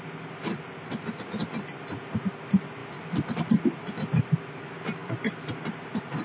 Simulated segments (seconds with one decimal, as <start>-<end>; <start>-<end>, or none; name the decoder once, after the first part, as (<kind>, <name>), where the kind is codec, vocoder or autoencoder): 2.8-3.8 (vocoder, BigVGAN v2); 5.0-5.5